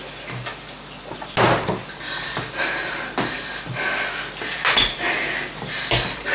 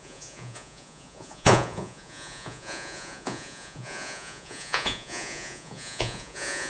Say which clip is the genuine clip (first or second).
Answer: first